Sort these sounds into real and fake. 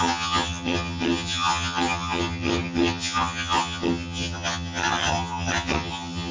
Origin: fake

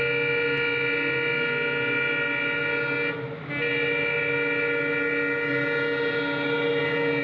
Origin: real